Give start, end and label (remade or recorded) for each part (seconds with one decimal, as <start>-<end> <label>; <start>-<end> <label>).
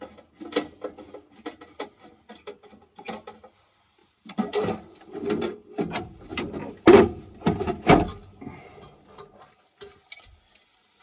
0.0-4.0 recorded; 4.0-4.9 remade; 4.9-6.3 recorded; 6.3-7.3 remade; 7.3-11.0 recorded